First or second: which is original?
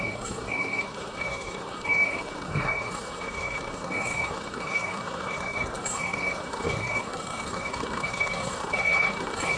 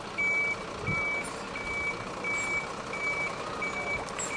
second